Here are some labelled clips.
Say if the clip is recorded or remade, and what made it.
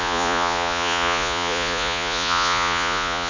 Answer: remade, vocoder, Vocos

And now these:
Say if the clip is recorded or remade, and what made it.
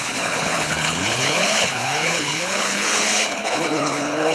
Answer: remade, codec, HILCodec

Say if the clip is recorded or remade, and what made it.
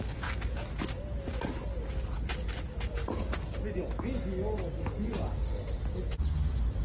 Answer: recorded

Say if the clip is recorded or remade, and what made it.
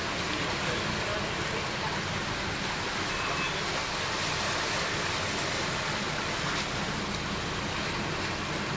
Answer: recorded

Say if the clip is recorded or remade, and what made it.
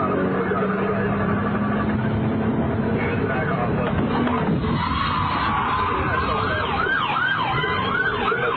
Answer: recorded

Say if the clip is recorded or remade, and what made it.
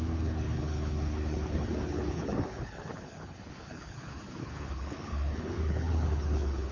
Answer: remade, codec, HILCodec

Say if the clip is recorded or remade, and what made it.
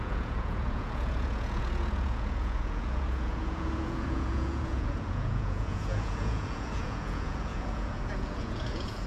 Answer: remade, vocoder, Vocos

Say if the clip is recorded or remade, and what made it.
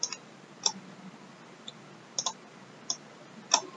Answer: recorded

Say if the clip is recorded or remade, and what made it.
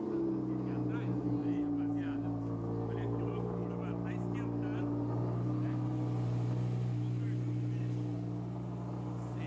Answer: recorded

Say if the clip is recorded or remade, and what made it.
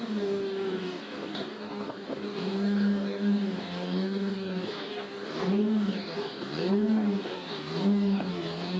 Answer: remade, codec, DAC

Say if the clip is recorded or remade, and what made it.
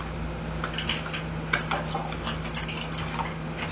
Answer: recorded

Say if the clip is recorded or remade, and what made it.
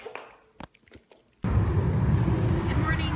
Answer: recorded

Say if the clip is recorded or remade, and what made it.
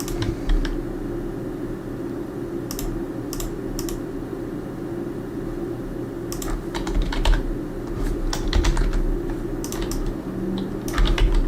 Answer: recorded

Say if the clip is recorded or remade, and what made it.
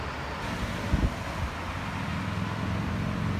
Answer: recorded